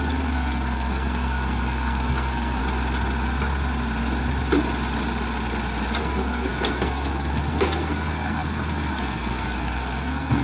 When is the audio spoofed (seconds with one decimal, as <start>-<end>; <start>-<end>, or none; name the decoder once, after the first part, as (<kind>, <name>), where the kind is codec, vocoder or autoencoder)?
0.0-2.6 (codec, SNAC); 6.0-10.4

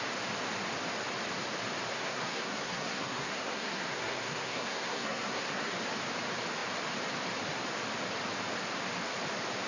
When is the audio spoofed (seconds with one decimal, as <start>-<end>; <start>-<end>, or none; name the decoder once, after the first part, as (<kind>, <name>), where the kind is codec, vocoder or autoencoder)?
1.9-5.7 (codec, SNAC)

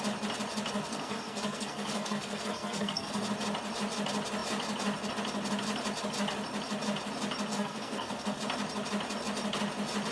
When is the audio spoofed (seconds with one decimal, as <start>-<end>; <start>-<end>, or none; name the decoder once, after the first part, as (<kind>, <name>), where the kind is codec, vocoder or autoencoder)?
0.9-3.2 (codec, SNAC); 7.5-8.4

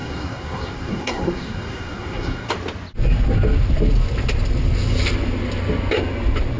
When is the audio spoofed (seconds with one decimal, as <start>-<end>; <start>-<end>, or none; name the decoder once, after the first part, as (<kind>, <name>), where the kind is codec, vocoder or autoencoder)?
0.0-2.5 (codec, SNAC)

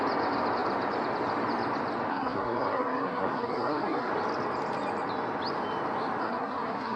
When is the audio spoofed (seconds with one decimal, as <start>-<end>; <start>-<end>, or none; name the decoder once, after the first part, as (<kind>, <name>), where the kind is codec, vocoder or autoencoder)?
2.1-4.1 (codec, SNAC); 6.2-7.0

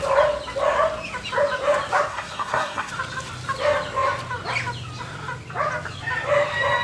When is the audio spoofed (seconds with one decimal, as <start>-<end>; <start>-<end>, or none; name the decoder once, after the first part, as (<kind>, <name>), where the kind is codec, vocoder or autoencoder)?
2.1-2.9 (codec, SNAC)